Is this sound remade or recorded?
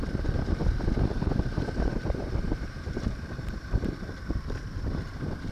remade